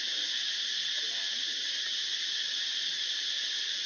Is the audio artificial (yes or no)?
no